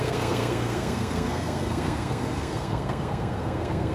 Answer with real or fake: fake